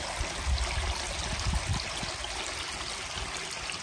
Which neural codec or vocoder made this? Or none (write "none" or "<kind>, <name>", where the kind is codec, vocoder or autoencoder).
none